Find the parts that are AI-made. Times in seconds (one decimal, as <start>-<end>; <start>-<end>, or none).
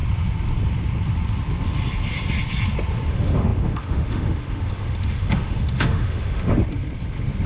3.1-6.6